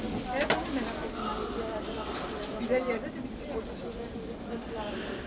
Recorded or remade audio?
recorded